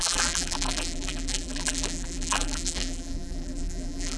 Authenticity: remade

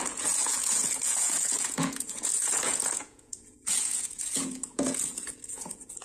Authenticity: remade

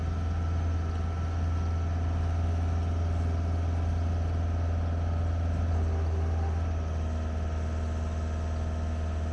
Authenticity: recorded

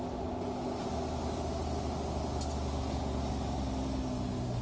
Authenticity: recorded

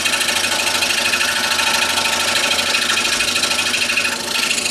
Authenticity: recorded